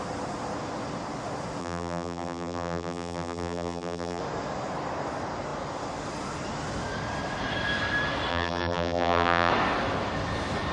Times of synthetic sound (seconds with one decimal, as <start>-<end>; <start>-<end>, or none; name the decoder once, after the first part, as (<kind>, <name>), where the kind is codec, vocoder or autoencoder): 1.6-4.2 (vocoder, BigVGAN v2); 8.3-9.5